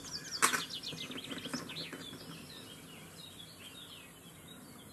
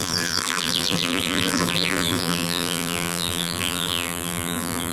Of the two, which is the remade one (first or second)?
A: second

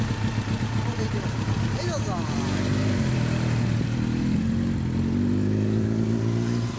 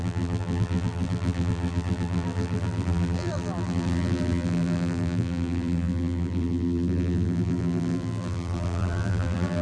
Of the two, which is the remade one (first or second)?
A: second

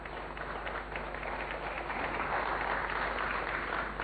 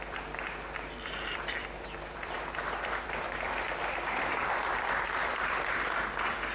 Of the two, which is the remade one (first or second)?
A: second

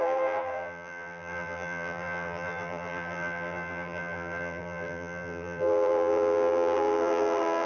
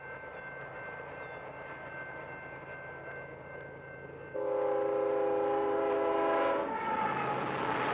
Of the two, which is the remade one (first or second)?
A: first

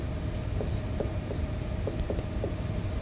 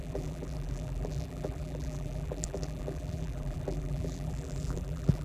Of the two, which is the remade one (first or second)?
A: second